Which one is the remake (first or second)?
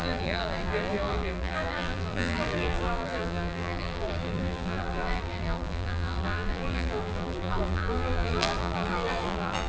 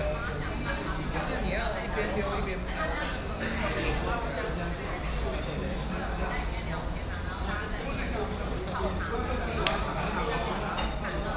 first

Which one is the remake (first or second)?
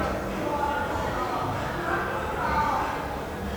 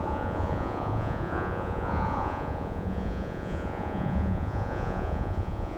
second